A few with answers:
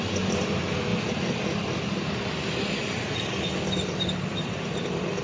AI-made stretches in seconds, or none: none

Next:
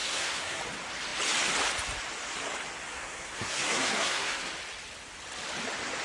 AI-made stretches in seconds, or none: 0.0-0.6 (codec, SNAC); 2.9-4.5

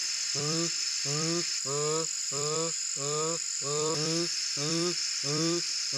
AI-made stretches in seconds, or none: 0.0-1.5 (vocoder, BigVGAN v2); 2.2-6.0

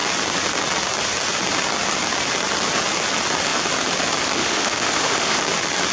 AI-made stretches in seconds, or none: 4.4-5.4 (autoencoder, DAC-VAE)